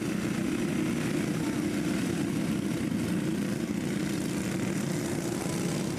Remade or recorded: recorded